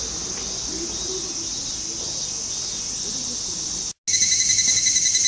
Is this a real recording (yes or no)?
yes